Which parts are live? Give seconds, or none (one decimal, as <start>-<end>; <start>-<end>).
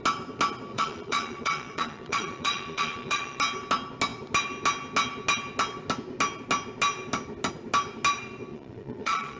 0.0-0.7; 3.4-8.5